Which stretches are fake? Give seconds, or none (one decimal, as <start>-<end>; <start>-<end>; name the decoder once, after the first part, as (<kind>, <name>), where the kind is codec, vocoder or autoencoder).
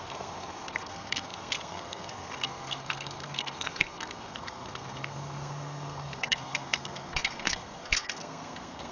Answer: 0.0-8.9 (codec, SNAC)